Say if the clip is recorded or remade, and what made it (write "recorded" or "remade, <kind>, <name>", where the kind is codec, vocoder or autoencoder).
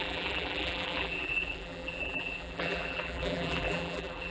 remade, vocoder, BigVGAN v2